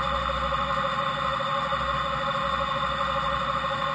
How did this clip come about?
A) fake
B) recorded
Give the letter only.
B